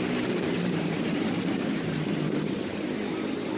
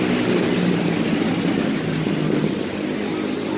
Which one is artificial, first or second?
first